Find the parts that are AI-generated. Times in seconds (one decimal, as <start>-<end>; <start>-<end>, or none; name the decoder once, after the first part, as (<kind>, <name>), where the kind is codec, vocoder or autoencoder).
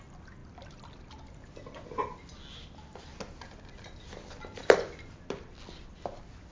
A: none